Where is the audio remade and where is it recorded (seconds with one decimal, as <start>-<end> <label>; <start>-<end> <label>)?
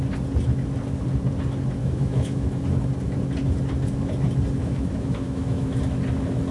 0.0-1.8 recorded; 1.8-2.6 remade; 2.6-4.6 recorded; 4.6-5.8 remade; 5.8-6.5 recorded